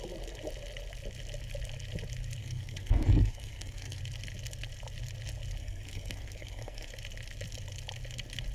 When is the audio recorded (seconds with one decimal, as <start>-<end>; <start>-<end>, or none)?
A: 0.0-2.4; 4.0-5.6; 6.9-8.5